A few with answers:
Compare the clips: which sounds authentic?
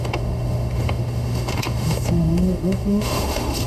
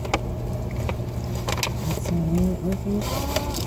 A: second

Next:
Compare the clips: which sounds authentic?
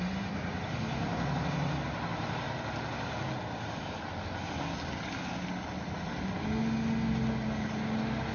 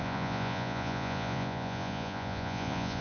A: first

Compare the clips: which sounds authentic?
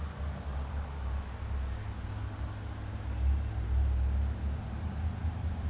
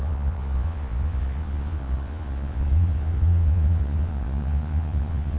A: first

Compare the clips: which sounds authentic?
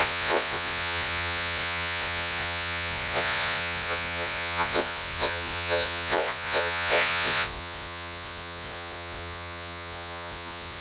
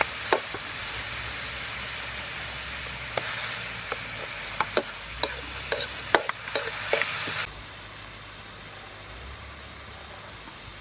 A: second